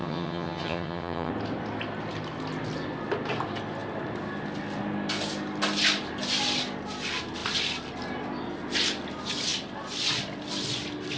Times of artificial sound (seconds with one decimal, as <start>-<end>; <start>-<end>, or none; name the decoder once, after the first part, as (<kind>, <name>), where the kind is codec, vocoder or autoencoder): 0.0-1.3 (vocoder, HiFi-GAN)